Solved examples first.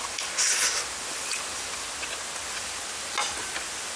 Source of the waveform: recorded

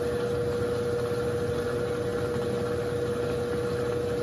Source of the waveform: recorded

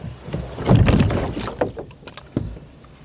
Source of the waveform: recorded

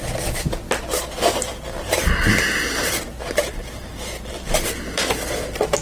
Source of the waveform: recorded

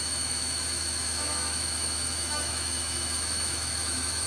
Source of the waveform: remade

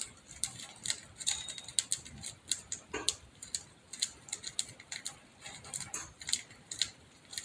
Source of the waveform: recorded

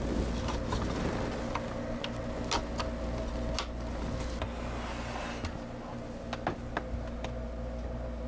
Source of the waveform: recorded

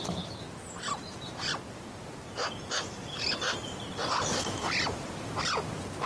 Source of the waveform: recorded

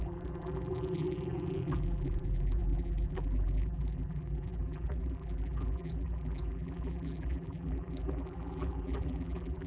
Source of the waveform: remade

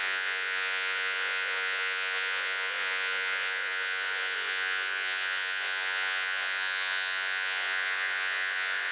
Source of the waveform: remade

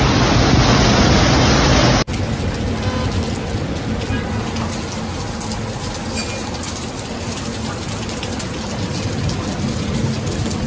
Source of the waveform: recorded